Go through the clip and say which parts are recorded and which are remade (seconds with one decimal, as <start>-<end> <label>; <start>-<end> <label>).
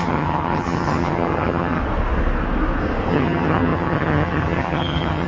0.0-1.8 remade; 1.8-3.1 recorded; 3.1-5.3 remade